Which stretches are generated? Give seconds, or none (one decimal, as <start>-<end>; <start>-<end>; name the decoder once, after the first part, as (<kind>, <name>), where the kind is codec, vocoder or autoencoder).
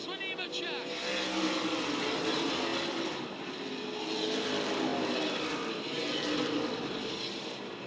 none